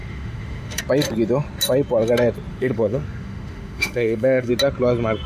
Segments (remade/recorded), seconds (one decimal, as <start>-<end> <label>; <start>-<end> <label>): 0.0-0.8 remade; 0.8-2.5 recorded; 2.5-4.5 remade; 4.5-5.3 recorded